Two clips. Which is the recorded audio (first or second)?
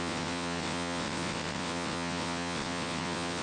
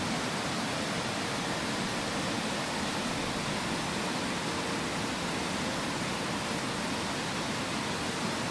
second